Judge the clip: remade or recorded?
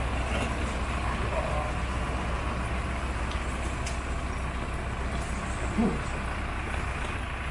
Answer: recorded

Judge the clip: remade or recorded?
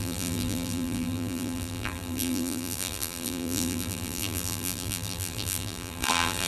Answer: remade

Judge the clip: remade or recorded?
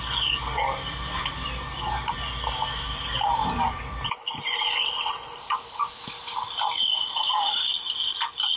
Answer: recorded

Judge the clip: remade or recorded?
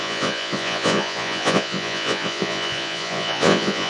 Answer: remade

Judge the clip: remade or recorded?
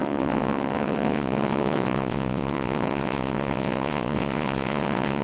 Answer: remade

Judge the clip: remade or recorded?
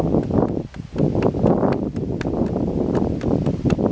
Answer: recorded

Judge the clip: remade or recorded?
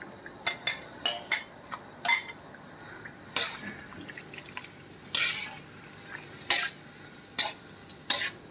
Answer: recorded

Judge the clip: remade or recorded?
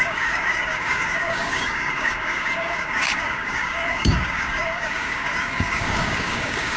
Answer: remade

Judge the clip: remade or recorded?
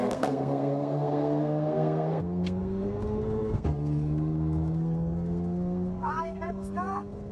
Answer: remade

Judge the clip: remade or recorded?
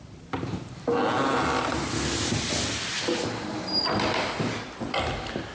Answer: recorded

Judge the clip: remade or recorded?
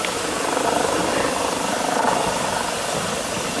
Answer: recorded